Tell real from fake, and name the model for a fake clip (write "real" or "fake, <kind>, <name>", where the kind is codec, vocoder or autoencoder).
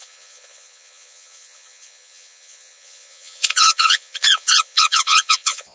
fake, vocoder, Vocos